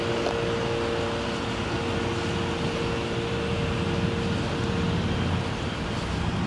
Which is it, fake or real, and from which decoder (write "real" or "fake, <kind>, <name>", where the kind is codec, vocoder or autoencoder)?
real